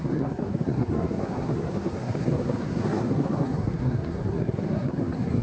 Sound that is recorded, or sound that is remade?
remade